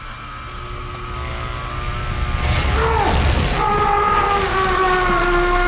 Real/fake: real